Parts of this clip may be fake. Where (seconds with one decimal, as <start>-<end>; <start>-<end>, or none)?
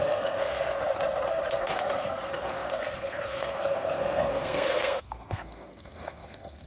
0.0-0.8; 1.3-6.7